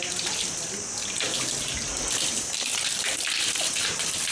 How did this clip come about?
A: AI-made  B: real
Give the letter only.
B